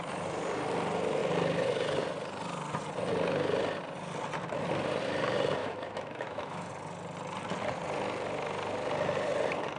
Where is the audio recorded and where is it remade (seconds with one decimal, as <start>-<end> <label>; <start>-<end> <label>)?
0.0-5.6 recorded; 5.6-6.7 remade; 6.7-9.8 recorded